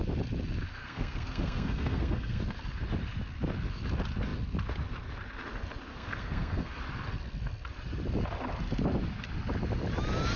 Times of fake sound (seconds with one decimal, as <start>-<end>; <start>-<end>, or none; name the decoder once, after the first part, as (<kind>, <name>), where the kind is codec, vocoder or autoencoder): 0.8-2.4 (codec, SNAC); 5.9-6.8